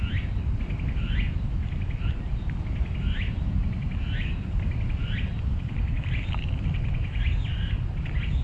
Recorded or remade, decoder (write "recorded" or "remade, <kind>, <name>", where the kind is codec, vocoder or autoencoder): recorded